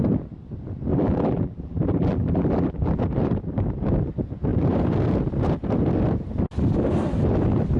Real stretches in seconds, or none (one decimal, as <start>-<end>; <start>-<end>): 0.0-0.9; 3.0-7.8